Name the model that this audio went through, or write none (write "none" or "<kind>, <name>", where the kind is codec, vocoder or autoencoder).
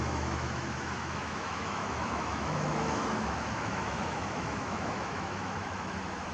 autoencoder, DAC-VAE